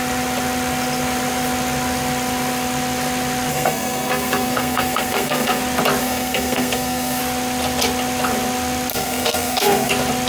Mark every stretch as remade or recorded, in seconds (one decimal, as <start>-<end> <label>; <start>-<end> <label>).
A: 0.0-3.5 recorded; 3.5-5.6 remade; 5.6-6.0 recorded; 6.0-7.2 remade; 7.2-8.9 recorded; 8.9-9.9 remade; 9.9-10.3 recorded